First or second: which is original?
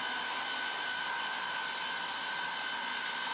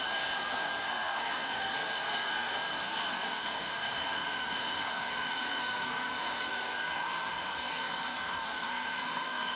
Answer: first